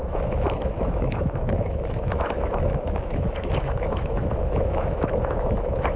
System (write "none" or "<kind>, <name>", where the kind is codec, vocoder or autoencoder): autoencoder, DAC-VAE